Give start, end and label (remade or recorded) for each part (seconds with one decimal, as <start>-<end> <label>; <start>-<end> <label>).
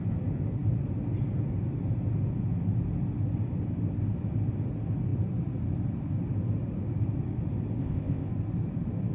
0.0-7.8 recorded; 7.8-8.3 remade; 8.3-9.1 recorded